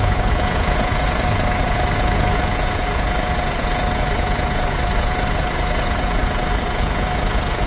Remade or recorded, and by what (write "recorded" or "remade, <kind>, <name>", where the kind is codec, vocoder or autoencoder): remade, vocoder, Vocos